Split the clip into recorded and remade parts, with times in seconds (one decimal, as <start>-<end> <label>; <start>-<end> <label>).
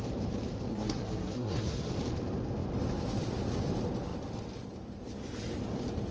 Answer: 0.0-0.7 recorded; 0.7-1.9 remade; 1.9-6.1 recorded